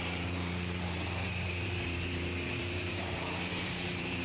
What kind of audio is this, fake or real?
fake